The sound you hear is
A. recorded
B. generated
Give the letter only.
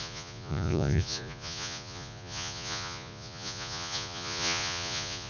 B